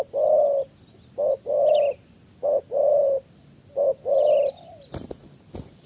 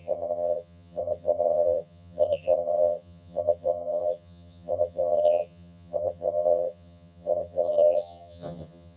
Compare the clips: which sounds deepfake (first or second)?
second